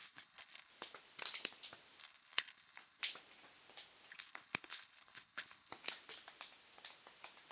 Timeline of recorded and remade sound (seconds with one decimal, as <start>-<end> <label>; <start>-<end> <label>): 0.0-0.7 remade; 0.7-2.0 recorded; 2.0-3.0 remade; 3.0-4.1 recorded; 4.1-5.7 remade; 5.7-7.5 recorded